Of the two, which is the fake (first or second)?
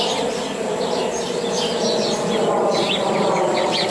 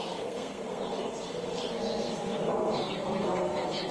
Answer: second